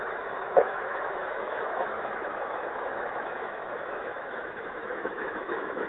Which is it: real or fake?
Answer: fake